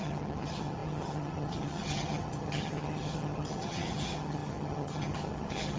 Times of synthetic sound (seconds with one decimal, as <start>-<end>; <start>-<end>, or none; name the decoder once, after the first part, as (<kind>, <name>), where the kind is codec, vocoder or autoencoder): 0.0-5.8 (vocoder, HiFi-GAN)